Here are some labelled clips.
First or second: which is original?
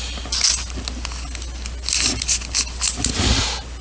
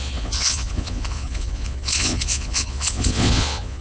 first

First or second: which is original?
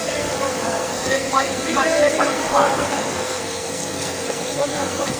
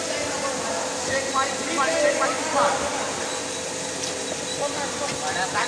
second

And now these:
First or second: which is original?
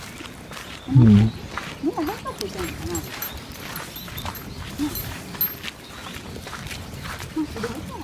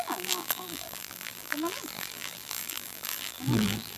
first